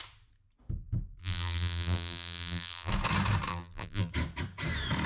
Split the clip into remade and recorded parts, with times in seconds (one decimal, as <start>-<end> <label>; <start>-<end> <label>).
0.0-1.2 recorded; 1.2-2.9 remade; 2.9-3.5 recorded; 3.5-4.1 remade; 4.1-5.1 recorded